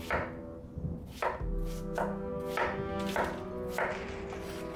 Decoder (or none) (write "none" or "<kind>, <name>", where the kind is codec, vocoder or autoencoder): none